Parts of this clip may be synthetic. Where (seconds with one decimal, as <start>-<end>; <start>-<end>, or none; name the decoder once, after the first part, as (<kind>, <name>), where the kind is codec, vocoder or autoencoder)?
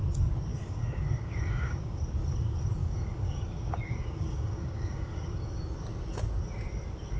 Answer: 0.5-2.0 (codec, DAC); 2.8-5.5